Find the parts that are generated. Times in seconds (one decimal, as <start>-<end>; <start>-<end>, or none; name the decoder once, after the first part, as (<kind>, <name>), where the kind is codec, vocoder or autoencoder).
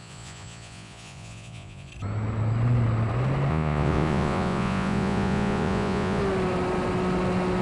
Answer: 0.0-1.9 (vocoder, Vocos); 3.5-6.2